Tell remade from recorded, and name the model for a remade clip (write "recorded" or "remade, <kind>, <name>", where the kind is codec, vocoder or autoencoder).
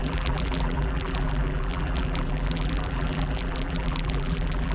remade, vocoder, BigVGAN v2